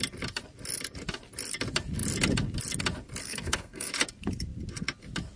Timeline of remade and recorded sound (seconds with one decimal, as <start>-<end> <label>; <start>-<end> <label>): 0.0-3.2 recorded; 3.2-3.9 remade; 3.9-5.4 recorded